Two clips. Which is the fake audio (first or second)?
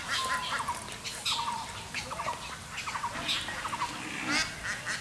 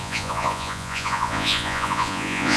second